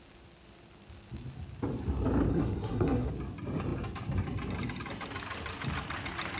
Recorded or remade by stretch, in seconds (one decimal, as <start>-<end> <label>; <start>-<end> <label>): 0.0-2.3 recorded; 2.3-3.1 remade; 3.1-6.4 recorded